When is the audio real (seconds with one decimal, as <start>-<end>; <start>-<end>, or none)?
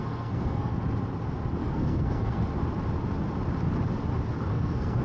0.7-1.6; 2.4-4.5